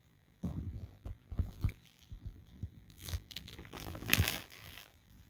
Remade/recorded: remade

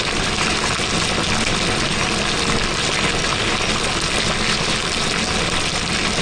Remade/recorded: recorded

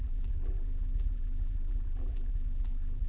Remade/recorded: remade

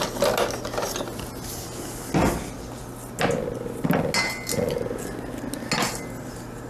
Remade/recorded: recorded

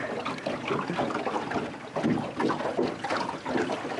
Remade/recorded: recorded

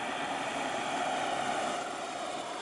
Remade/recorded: remade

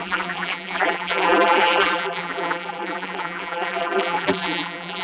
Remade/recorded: remade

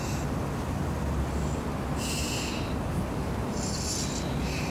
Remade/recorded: recorded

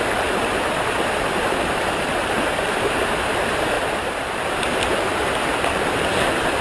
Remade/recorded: remade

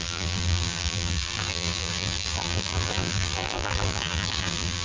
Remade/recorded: remade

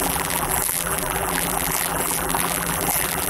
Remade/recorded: remade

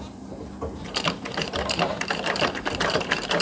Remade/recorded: remade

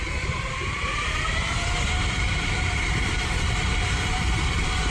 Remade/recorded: remade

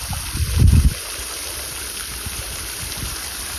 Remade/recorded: remade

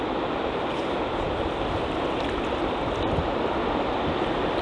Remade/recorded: recorded